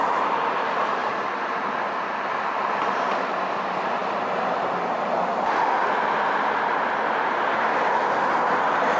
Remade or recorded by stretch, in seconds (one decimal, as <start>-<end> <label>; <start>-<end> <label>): 0.0-1.0 recorded; 1.0-2.7 remade; 2.7-9.0 recorded